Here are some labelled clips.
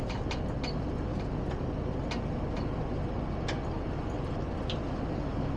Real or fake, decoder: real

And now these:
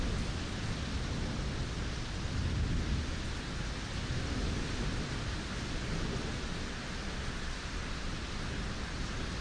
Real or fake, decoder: real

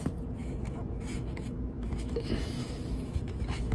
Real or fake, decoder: fake, autoencoder, DAC-VAE